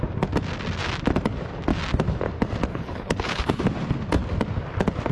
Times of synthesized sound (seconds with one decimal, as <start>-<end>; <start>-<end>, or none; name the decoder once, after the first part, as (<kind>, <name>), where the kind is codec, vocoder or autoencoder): 2.7-3.6 (codec, HILCodec)